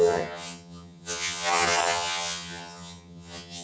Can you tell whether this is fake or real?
fake